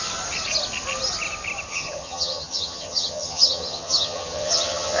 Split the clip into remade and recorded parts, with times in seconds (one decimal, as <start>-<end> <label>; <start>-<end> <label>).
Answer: 0.0-1.7 recorded; 1.7-5.0 remade